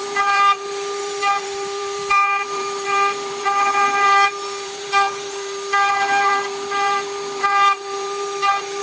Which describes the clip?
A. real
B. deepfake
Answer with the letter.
B